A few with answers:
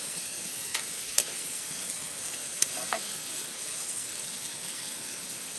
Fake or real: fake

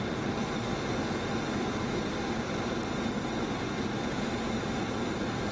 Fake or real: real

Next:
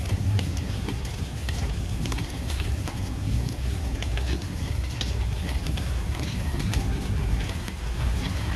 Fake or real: fake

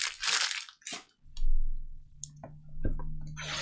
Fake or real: real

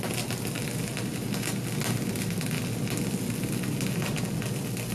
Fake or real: real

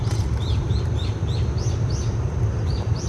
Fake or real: real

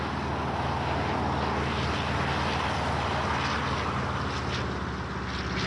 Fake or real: real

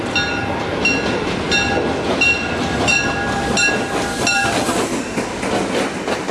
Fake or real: real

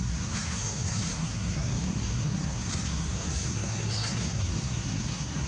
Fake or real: fake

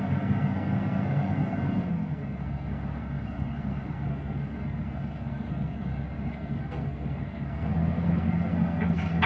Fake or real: fake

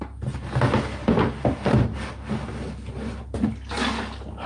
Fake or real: real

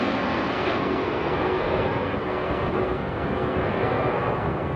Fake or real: fake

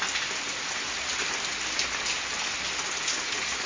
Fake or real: real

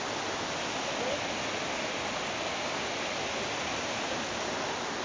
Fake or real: real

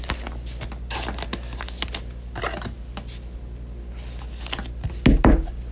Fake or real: real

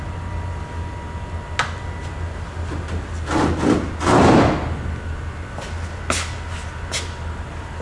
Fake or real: real